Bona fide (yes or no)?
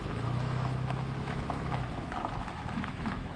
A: no